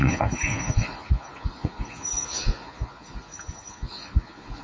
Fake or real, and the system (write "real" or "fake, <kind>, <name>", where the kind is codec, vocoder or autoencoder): fake, vocoder, Vocos